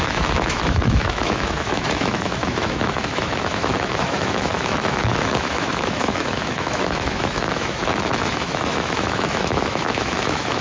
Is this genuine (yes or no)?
no